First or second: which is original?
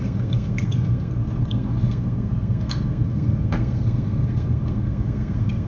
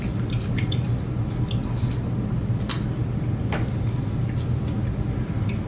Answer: second